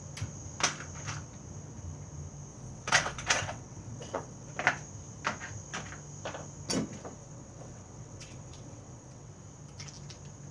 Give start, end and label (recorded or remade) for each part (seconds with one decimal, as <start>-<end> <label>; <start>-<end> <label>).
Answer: 0.0-2.5 recorded; 2.5-4.5 remade; 4.5-7.2 recorded; 7.2-9.3 remade; 9.3-10.5 recorded